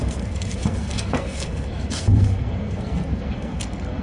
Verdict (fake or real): fake